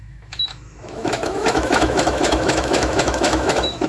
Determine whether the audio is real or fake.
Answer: fake